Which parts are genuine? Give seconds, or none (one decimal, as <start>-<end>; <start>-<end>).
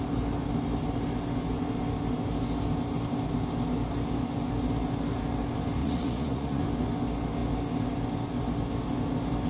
0.0-5.8; 6.6-9.5